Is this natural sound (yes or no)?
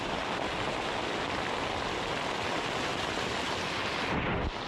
yes